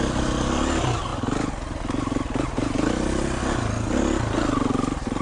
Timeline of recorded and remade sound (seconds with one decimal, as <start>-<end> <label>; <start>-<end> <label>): 0.0-5.2 recorded